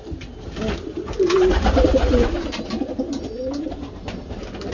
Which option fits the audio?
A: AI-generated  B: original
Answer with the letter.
B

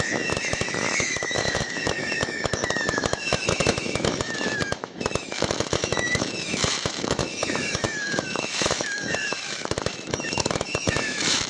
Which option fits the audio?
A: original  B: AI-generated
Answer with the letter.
B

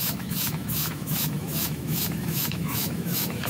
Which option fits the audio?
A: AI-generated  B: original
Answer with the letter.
A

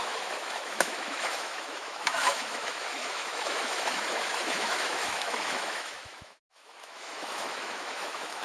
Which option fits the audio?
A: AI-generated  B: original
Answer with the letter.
A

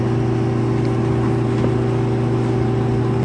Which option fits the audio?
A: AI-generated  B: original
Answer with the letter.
B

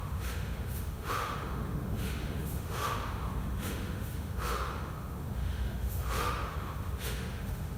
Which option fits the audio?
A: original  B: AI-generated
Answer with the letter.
B